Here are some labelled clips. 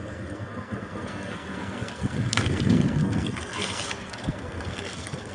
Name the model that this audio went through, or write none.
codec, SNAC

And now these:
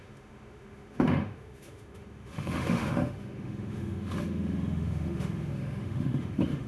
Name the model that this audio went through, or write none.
autoencoder, DAC-VAE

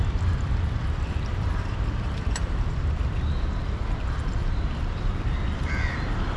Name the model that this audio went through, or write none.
vocoder, BigVGAN v2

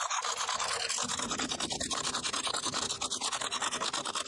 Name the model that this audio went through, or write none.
none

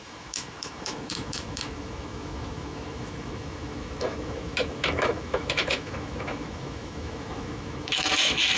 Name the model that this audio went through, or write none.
autoencoder, DAC-VAE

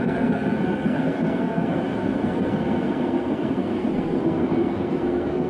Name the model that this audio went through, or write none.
codec, SNAC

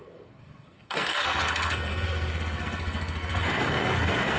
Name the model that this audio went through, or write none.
codec, SNAC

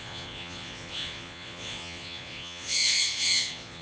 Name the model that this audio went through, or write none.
vocoder, Vocos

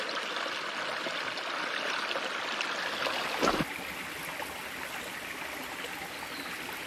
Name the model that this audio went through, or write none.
none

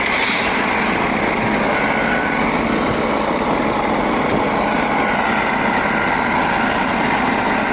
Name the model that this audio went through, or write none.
none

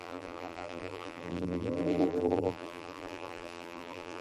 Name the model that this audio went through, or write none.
vocoder, BigVGAN v2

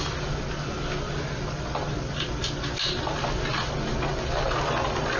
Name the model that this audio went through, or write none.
none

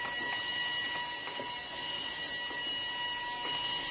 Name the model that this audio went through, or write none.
none